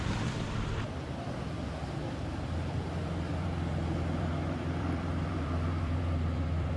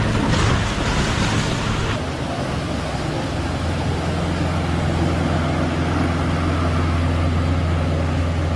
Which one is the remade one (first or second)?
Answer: first